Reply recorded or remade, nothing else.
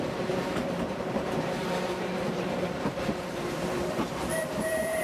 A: remade